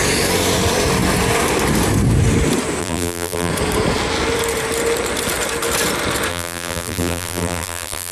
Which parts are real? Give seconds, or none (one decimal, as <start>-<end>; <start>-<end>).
0.0-2.8; 3.5-6.3